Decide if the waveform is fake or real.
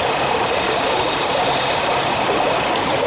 real